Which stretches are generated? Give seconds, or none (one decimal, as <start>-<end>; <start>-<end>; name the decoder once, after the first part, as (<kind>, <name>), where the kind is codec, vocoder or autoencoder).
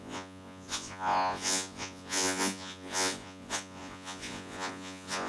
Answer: 0.0-5.3 (vocoder, Vocos)